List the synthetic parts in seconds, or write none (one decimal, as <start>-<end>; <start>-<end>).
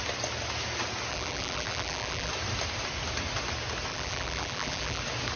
1.1-2.3; 3.9-5.0